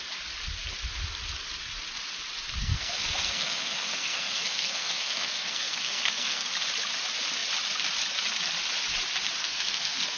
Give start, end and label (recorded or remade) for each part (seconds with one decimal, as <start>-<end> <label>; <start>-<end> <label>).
0.0-2.6 recorded; 2.6-6.5 remade; 6.5-9.4 recorded; 9.4-10.2 remade